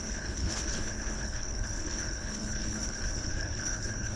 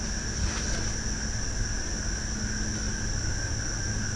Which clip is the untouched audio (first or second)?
second